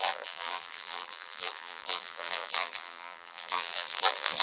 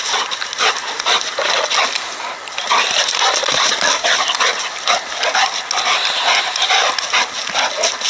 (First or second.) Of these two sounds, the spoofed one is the first